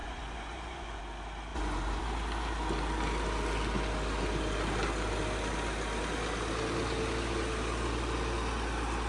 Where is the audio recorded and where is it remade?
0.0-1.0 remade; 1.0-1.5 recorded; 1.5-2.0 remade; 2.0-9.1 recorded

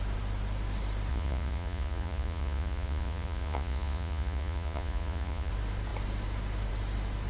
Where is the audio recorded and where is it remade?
0.0-1.1 recorded; 1.1-5.5 remade; 5.5-7.3 recorded

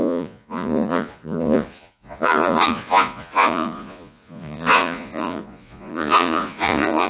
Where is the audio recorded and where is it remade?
0.0-7.1 remade